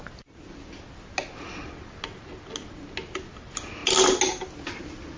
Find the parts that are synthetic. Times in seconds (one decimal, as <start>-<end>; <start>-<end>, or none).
none